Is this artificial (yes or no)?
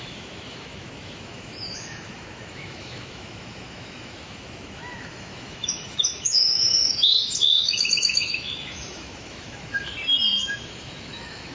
yes